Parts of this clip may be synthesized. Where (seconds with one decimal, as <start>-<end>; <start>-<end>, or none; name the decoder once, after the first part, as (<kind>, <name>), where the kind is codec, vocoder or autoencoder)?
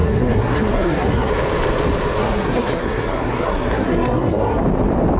0.0-1.3 (codec, SNAC); 2.2-4.6